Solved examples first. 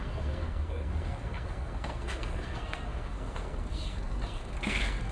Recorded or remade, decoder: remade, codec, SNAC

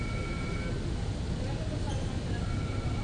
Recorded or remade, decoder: recorded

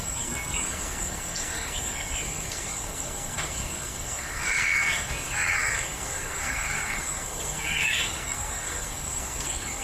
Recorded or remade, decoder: remade, codec, SNAC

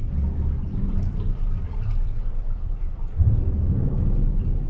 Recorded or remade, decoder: recorded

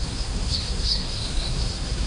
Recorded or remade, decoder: remade, codec, SNAC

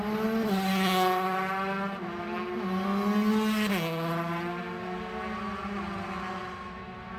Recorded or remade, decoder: recorded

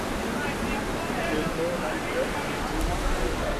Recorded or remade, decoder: recorded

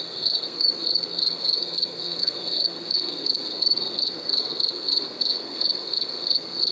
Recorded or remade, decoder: remade, codec, SNAC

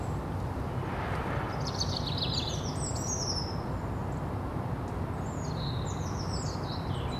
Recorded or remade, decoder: recorded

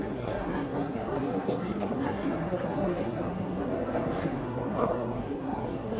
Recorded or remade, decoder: remade, codec, SNAC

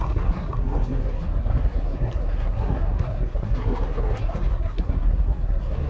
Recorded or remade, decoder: remade, codec, SNAC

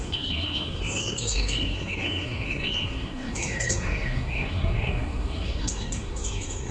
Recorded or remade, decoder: remade, codec, SNAC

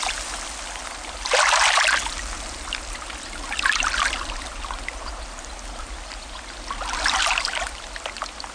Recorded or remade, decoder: recorded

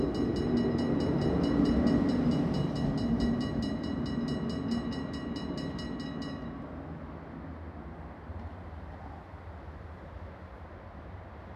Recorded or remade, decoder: recorded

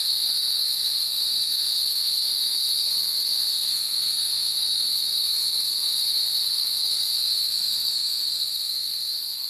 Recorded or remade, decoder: remade, codec, SNAC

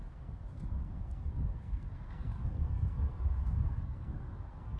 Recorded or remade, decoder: remade, codec, SNAC